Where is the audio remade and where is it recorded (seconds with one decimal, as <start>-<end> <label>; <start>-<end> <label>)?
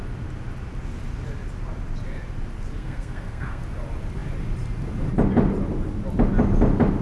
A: 0.0-2.8 recorded; 2.8-3.6 remade; 3.6-7.0 recorded